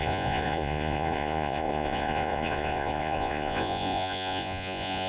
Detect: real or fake fake